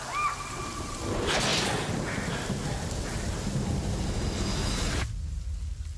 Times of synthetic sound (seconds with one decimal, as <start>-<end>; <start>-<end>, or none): none